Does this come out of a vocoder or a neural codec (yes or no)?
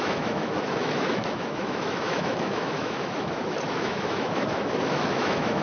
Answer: yes